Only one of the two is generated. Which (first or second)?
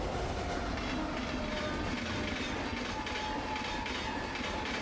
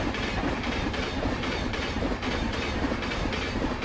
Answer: second